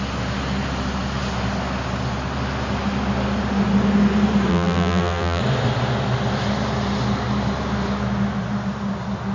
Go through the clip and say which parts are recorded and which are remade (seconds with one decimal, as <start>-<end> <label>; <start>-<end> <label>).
0.0-4.5 recorded; 4.5-5.4 remade; 5.4-9.3 recorded